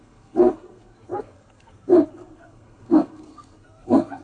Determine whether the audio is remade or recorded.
remade